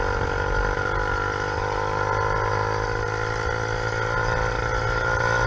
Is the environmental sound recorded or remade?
recorded